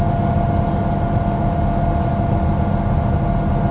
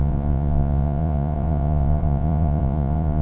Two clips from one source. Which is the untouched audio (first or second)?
first